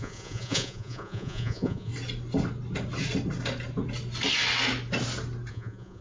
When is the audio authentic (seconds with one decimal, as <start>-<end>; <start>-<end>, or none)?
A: 1.9-5.5